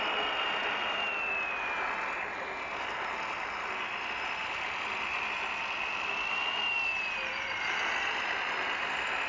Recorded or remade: recorded